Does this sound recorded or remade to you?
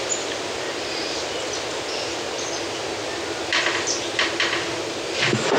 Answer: recorded